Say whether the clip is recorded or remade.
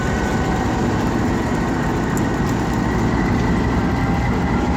recorded